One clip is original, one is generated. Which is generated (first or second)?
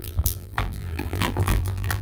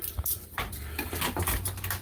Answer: first